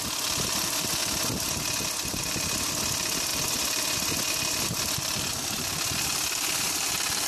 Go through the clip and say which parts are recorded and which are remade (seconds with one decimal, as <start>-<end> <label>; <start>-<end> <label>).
0.0-7.3 recorded